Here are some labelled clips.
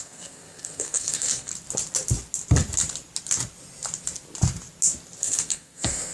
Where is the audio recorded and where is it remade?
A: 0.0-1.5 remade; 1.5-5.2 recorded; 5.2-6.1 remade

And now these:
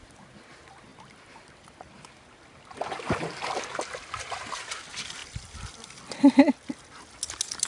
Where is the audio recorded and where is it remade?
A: 0.0-5.2 recorded; 5.2-6.0 remade; 6.0-7.7 recorded

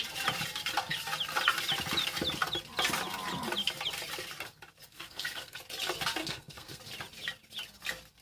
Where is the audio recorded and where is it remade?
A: 0.0-4.9 recorded; 4.9-5.6 remade; 5.6-6.2 recorded; 6.2-6.8 remade; 6.8-8.2 recorded